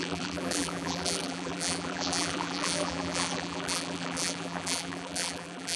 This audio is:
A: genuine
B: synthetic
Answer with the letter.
B